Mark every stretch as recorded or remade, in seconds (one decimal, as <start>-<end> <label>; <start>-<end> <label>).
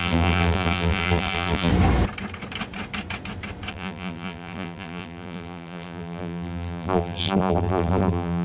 0.0-1.7 remade; 1.7-3.7 recorded; 3.7-8.4 remade